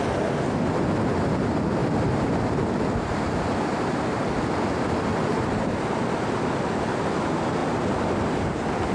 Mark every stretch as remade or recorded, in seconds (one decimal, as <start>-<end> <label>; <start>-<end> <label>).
0.0-5.1 recorded; 5.1-6.0 remade; 6.0-8.9 recorded